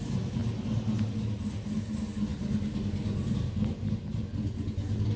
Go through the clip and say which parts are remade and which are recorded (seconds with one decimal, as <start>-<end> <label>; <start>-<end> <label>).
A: 0.0-5.2 recorded